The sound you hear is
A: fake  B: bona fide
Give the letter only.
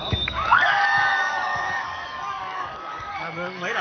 A